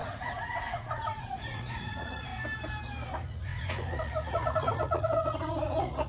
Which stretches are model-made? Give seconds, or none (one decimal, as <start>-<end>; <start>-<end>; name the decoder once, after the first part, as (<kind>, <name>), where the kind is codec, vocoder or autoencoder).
0.0-2.3 (vocoder, Vocos); 3.1-6.1